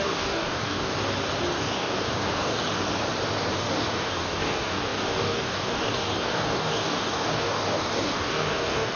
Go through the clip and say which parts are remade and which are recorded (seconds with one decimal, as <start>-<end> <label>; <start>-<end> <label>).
0.0-1.0 remade; 1.0-1.6 recorded; 1.6-2.6 remade; 2.6-3.5 recorded; 3.5-9.0 remade